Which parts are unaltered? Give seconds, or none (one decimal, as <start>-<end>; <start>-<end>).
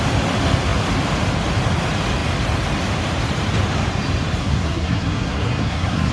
0.0-4.4